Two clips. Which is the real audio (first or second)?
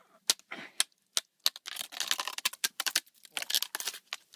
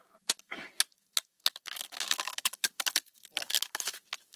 first